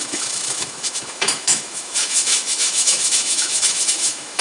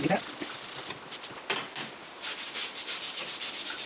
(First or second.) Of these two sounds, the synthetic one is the first